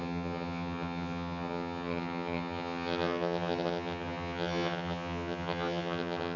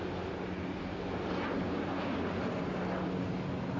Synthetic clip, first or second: first